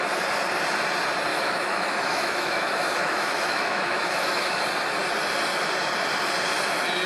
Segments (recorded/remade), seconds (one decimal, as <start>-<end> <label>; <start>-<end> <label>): 0.0-1.3 recorded; 1.3-4.6 remade; 4.6-7.1 recorded